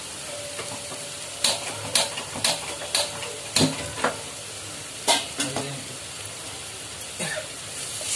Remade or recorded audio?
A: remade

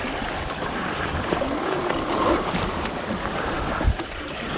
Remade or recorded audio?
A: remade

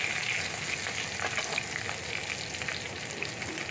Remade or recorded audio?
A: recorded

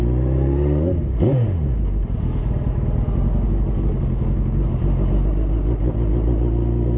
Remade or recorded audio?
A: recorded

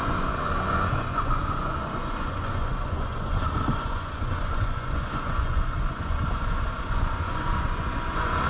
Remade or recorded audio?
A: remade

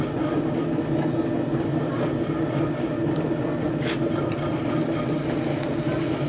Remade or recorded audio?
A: recorded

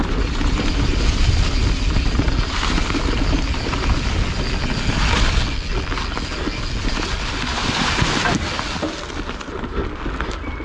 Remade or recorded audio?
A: recorded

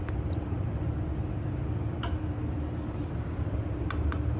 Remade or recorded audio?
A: recorded